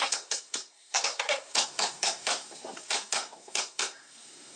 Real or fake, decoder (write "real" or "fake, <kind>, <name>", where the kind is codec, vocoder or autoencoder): fake, codec, SNAC